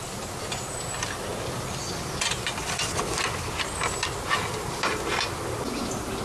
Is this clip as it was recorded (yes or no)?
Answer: yes